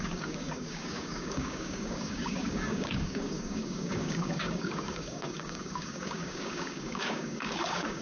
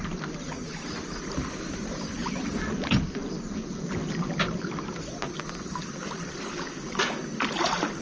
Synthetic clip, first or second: first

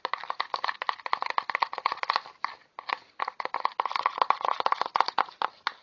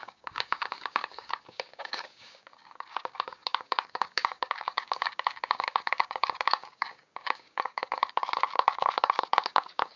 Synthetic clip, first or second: second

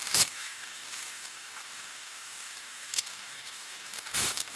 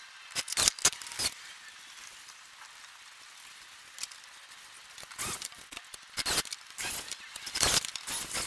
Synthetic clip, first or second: first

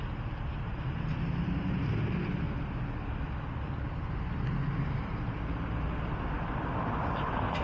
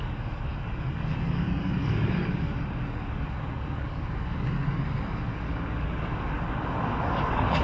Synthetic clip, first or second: second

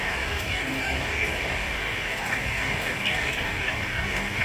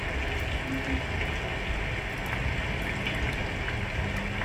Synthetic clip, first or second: first